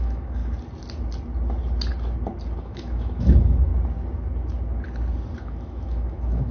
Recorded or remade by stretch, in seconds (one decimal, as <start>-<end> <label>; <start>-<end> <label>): 0.0-0.4 remade; 0.4-2.6 recorded; 2.6-3.7 remade; 3.7-5.4 recorded; 5.4-6.5 remade